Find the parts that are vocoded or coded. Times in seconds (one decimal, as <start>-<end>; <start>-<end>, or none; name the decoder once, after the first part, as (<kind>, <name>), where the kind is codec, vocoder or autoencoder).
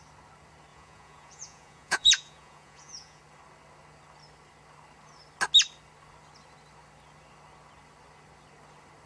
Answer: 0.7-3.2 (vocoder, Vocos)